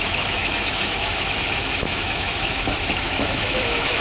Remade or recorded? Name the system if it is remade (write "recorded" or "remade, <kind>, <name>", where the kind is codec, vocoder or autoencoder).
remade, autoencoder, DAC-VAE